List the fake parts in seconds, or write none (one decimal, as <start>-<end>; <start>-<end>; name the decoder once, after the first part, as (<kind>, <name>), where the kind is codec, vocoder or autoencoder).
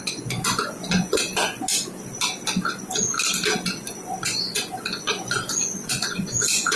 0.0-1.7 (vocoder, Vocos); 3.7-6.8